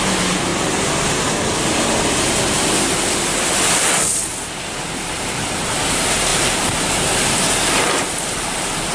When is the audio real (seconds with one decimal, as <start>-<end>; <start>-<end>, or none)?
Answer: 0.5-5.1